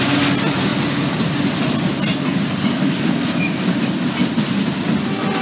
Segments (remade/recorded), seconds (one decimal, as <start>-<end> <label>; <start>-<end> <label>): 0.0-5.4 recorded